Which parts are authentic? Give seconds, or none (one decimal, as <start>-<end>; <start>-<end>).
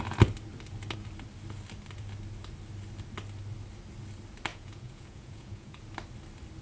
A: 0.0-4.5; 5.8-6.6